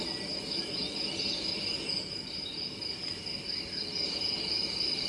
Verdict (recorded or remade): recorded